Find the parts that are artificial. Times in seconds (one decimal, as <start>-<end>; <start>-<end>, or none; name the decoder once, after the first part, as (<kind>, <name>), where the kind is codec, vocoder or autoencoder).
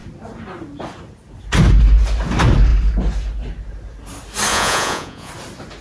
4.5-5.3 (vocoder, Vocos)